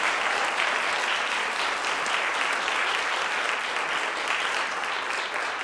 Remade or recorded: recorded